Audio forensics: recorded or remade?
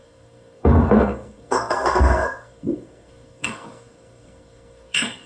remade